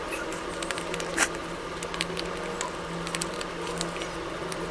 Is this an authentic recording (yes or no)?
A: yes